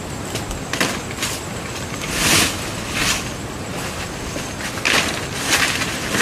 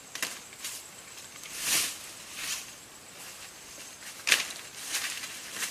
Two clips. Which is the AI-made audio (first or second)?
second